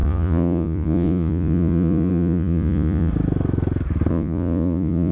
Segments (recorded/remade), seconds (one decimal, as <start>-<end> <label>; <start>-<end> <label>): 0.0-3.1 remade; 3.1-4.1 recorded; 4.1-5.1 remade